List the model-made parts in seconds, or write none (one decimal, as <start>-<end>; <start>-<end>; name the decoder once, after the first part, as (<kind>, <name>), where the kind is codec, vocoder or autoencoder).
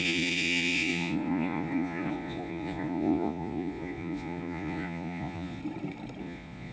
0.0-5.6 (vocoder, Vocos); 6.2-6.7